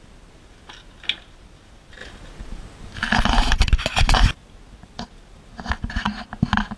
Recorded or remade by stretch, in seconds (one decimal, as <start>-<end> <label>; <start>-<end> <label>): 0.0-6.8 recorded